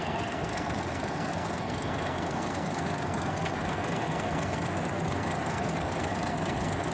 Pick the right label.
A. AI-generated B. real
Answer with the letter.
A